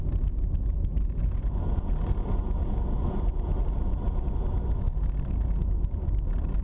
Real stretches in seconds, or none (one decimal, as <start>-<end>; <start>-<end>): 0.0-0.9; 3.5-6.6